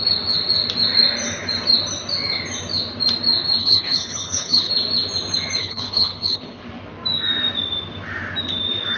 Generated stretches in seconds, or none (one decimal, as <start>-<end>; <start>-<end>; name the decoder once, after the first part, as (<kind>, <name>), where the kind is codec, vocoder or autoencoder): 3.6-4.7 (codec, HILCodec); 5.6-6.6